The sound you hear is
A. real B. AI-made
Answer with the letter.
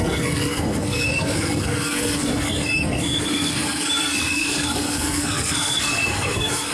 B